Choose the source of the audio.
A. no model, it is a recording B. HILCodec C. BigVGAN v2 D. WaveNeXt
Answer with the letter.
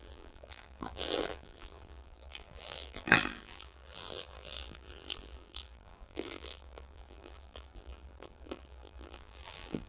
C